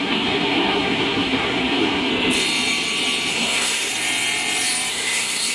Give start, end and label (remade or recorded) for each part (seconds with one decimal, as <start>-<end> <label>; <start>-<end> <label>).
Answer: 0.0-2.1 remade; 2.1-3.3 recorded; 3.3-3.9 remade; 3.9-4.9 recorded; 4.9-5.5 remade